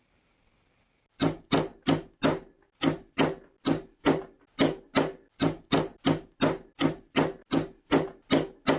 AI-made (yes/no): no